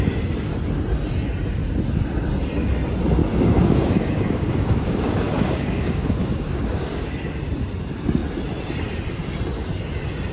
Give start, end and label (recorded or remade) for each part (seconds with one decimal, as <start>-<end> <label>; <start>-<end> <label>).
0.0-3.2 recorded; 3.2-7.1 remade; 7.1-10.3 recorded